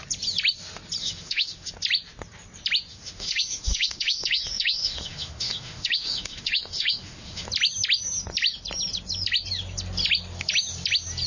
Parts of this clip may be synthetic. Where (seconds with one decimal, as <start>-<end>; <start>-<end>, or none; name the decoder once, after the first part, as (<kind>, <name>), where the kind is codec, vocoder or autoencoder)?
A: 1.0-1.7 (autoencoder, DAC-VAE); 2.9-7.5